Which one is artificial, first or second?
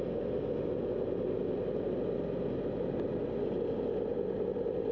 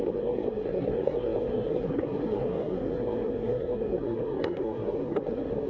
second